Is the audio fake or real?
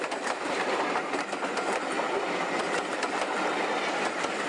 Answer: real